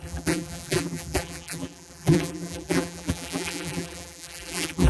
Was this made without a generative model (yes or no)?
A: no